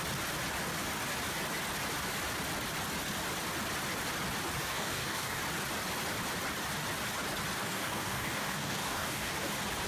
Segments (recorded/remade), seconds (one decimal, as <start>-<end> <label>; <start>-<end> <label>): 0.0-4.6 recorded; 4.6-5.4 remade; 5.4-7.6 recorded; 7.6-9.5 remade; 9.5-9.9 recorded